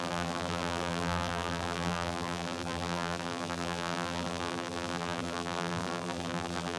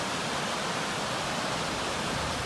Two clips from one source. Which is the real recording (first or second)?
second